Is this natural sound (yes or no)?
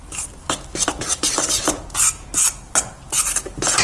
yes